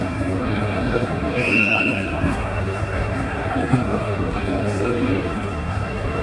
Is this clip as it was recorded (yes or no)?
no